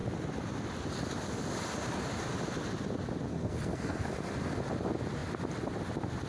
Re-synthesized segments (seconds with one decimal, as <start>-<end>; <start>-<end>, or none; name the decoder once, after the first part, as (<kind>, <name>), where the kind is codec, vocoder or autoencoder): 3.3-4.1 (codec, SNAC)